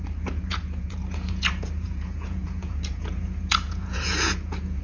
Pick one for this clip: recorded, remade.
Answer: remade